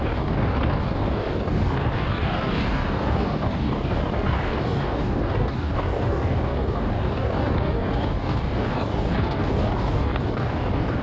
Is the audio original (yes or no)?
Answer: no